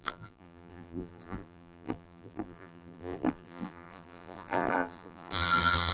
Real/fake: fake